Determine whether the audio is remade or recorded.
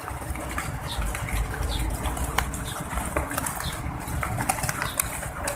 remade